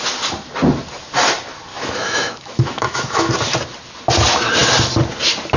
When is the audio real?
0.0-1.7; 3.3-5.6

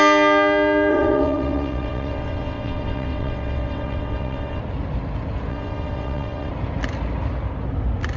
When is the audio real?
0.0-0.9; 4.6-5.5; 6.5-8.2

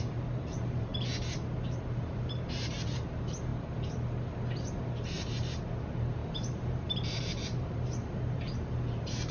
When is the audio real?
0.9-1.8; 3.5-5.1